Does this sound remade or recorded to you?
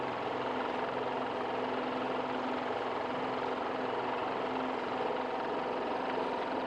recorded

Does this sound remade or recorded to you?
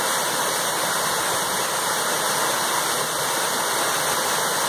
recorded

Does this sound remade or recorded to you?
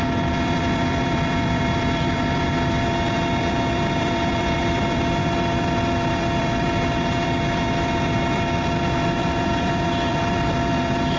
remade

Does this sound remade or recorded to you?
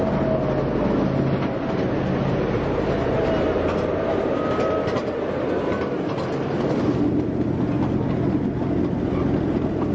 recorded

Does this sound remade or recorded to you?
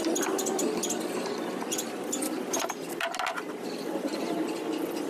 recorded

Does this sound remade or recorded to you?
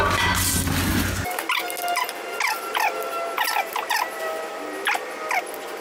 recorded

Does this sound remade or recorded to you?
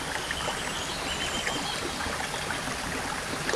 recorded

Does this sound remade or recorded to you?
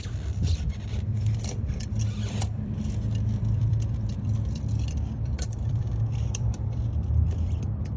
remade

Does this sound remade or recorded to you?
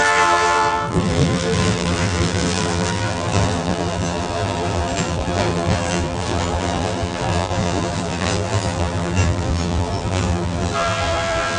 remade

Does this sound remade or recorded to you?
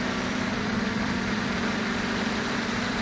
remade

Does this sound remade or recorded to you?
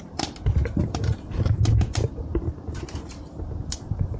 remade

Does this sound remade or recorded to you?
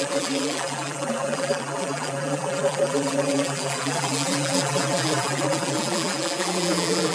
remade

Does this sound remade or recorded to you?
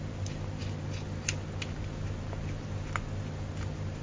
recorded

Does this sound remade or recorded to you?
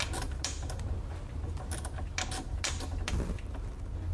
recorded